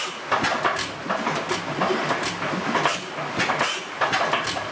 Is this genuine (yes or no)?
yes